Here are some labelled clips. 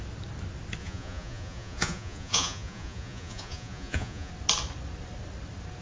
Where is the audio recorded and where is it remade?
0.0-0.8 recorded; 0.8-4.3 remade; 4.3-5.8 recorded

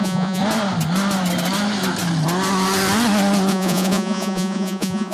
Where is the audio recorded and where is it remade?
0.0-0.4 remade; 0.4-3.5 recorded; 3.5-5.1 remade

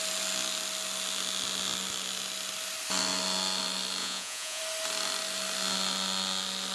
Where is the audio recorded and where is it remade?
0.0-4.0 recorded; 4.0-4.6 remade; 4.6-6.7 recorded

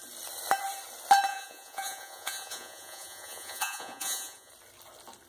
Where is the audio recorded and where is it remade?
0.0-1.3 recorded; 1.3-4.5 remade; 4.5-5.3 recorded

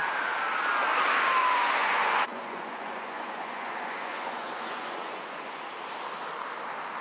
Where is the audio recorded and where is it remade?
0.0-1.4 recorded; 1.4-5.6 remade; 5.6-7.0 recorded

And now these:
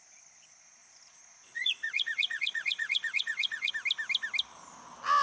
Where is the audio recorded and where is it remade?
0.0-0.6 recorded; 0.6-3.7 remade; 3.7-5.2 recorded

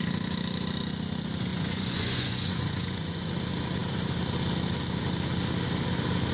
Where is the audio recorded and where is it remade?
0.0-1.5 recorded; 1.5-3.3 remade; 3.3-6.3 recorded

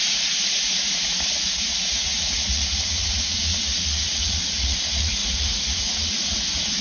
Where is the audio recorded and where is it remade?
0.0-6.8 remade